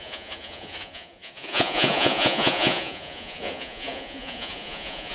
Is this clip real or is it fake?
fake